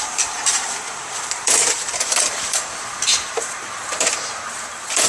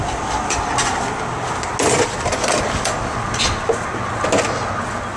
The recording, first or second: second